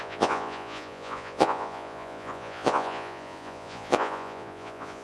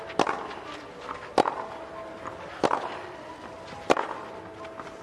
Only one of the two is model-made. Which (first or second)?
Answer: first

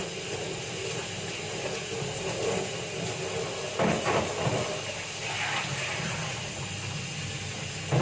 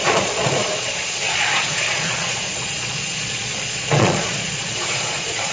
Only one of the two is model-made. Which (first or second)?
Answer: second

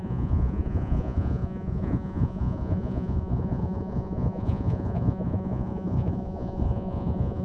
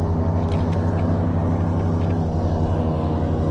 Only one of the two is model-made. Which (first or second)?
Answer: first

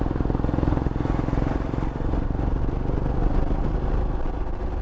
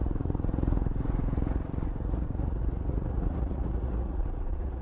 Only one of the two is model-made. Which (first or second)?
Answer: second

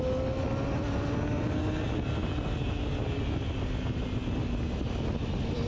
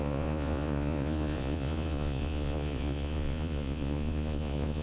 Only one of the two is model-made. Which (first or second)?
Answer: second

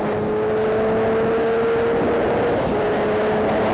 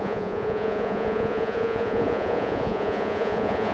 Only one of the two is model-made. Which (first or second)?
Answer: second